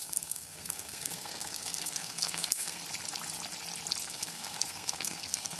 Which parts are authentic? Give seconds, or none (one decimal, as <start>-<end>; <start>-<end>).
2.8-4.0